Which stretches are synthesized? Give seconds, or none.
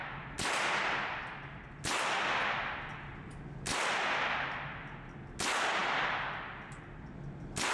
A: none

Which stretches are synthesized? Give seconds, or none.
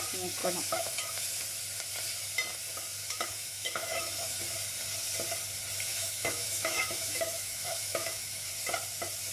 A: 0.4-1.4 (autoencoder, DAC-VAE); 3.0-4.4; 5.9-8.5